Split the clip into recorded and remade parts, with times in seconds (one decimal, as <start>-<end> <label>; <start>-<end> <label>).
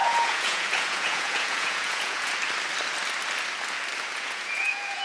0.0-2.3 remade; 2.3-4.1 recorded; 4.1-5.0 remade